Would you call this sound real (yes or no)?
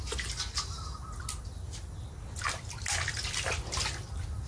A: yes